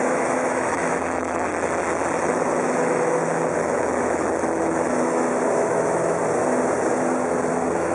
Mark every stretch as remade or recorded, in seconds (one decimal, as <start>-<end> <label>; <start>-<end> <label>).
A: 0.0-1.5 remade; 1.5-2.2 recorded; 2.2-6.2 remade; 6.2-7.5 recorded; 7.5-7.9 remade